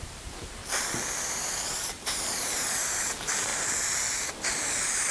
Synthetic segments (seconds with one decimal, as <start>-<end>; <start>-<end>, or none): 0.0-0.6; 1.2-3.5; 4.3-5.1